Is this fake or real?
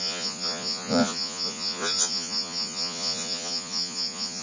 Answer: fake